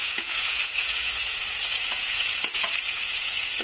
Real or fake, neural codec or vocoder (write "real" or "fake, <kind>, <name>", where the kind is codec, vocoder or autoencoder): fake, vocoder, Vocos